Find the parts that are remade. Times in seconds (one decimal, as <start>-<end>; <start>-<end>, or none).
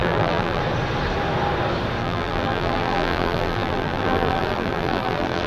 0.0-0.6; 2.0-5.5